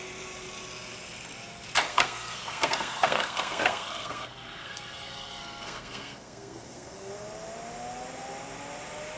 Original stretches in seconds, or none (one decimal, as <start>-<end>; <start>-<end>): 0.0-1.9; 7.1-9.2